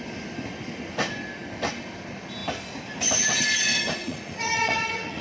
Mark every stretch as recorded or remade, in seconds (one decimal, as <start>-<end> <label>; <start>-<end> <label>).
0.0-4.0 recorded; 4.0-5.2 remade